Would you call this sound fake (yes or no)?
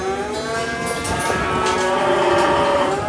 no